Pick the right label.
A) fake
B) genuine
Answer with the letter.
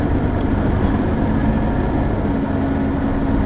B